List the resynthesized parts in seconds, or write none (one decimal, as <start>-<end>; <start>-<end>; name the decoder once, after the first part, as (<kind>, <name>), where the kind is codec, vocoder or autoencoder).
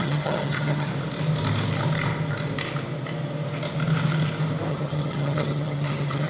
0.0-0.9 (vocoder, HiFi-GAN); 4.7-6.3